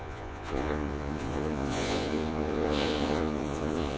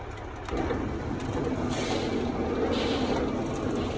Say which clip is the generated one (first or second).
first